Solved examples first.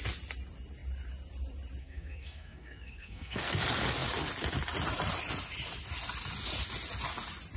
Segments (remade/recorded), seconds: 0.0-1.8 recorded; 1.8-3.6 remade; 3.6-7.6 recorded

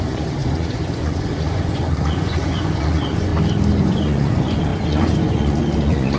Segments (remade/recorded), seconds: 0.0-3.3 remade; 3.3-3.8 recorded; 3.8-6.2 remade

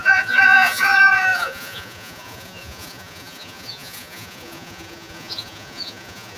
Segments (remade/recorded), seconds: 0.0-6.4 remade

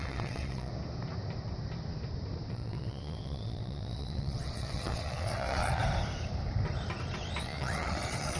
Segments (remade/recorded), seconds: 0.0-0.7 remade; 0.7-2.5 recorded; 2.5-5.8 remade; 5.8-7.4 recorded; 7.4-8.4 remade